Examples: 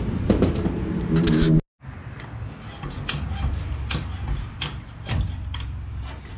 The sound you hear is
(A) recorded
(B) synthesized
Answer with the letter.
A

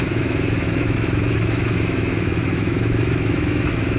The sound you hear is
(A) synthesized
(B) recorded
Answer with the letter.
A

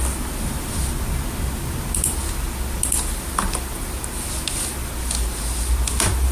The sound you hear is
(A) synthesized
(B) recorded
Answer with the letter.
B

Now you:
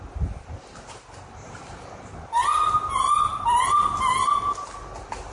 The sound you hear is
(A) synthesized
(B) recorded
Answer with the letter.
B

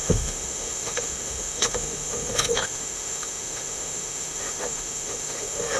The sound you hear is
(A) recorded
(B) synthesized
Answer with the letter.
B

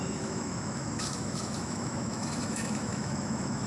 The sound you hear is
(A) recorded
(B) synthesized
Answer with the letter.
B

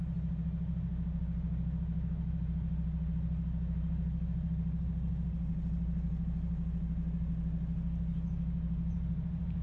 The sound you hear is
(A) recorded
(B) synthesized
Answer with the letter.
A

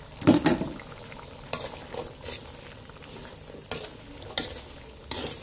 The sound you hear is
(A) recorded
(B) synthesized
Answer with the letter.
A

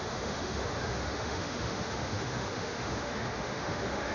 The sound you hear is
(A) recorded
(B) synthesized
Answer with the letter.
B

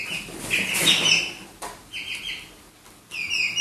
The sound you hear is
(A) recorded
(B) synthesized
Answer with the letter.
A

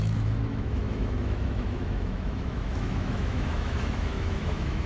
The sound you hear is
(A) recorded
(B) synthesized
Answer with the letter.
B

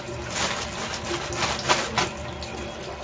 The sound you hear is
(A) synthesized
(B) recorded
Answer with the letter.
B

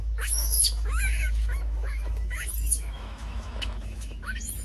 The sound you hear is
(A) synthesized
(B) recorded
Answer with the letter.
A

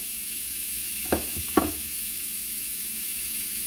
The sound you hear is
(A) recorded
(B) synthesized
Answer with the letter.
B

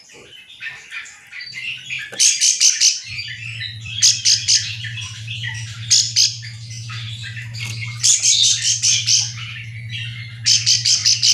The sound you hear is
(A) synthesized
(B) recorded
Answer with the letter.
B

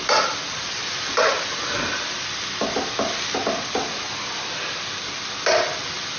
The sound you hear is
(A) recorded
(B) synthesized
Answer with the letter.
A